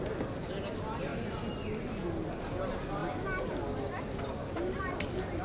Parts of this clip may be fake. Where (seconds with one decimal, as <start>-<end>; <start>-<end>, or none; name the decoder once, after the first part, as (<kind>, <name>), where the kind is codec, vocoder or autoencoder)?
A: none